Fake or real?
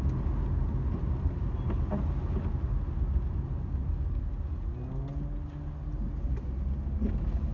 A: real